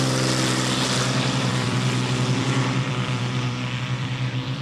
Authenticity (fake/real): fake